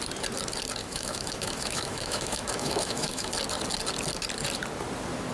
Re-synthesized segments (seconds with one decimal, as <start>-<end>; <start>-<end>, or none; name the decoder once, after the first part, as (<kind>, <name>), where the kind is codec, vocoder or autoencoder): 0.8-3.3 (autoencoder, DAC-VAE)

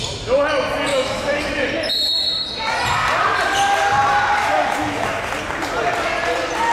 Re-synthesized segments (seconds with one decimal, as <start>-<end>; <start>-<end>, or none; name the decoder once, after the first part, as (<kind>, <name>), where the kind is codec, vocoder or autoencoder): 0.9-1.5 (autoencoder, DAC-VAE); 4.4-5.3

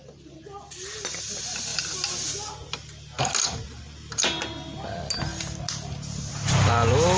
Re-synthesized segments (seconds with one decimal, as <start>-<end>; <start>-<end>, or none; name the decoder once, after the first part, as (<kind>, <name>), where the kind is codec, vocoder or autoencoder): none